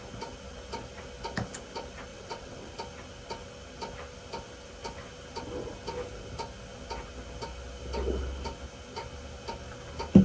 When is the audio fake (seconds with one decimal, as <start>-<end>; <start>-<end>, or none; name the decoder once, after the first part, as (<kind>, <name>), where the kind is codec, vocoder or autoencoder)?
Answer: 2.1-2.7 (vocoder, WaveNeXt)